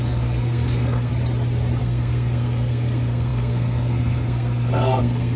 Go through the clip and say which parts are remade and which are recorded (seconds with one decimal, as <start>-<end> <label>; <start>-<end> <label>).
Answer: 0.0-1.1 remade; 1.1-1.8 recorded; 1.8-5.4 remade